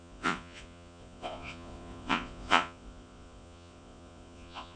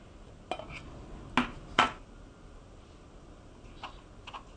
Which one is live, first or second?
second